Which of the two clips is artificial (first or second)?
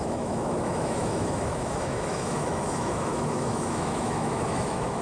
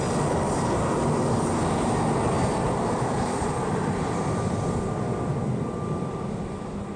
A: first